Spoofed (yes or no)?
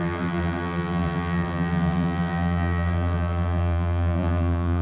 yes